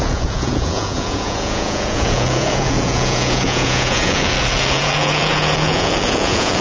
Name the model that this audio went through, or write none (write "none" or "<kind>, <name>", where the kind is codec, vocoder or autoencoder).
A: vocoder, Vocos